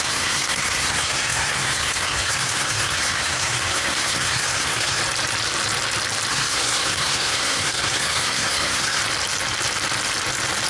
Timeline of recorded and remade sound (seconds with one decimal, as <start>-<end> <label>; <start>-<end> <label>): 0.0-5.0 remade; 5.0-6.3 recorded; 6.3-9.0 remade; 9.0-10.7 recorded